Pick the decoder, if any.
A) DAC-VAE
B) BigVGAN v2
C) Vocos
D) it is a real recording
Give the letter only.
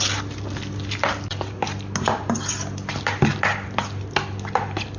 D